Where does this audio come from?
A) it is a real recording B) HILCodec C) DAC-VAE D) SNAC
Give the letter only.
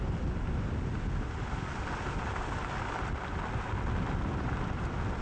A